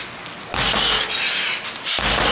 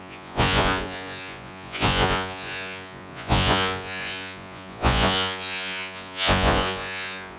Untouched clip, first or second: first